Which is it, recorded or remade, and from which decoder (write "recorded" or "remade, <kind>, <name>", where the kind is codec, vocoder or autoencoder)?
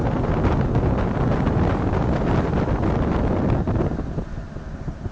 recorded